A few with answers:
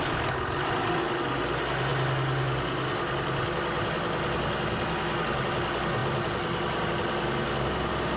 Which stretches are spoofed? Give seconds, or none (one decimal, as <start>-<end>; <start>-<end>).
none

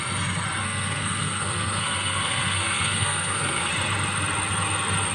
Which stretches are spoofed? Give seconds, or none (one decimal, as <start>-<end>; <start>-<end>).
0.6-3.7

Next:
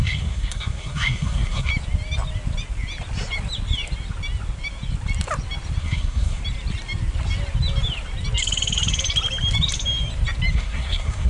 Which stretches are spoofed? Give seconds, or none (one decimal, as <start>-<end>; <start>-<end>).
0.0-1.7; 5.8-6.4; 10.5-11.3

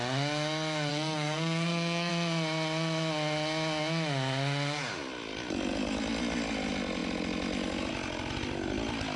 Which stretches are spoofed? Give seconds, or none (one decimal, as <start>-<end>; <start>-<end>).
0.9-2.1

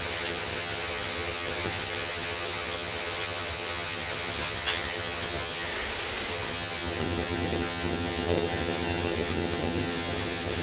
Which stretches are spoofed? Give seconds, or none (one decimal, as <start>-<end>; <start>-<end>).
0.0-5.7; 6.3-10.6

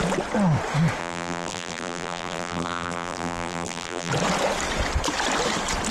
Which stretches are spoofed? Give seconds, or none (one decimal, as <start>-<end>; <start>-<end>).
1.0-4.1

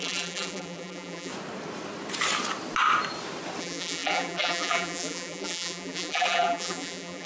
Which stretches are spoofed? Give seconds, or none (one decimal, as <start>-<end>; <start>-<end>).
0.0-1.3; 3.6-7.3